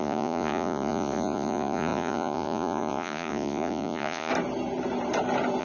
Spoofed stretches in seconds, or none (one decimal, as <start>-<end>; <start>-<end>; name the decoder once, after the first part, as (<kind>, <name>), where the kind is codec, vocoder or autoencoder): 0.0-4.3 (vocoder, Vocos)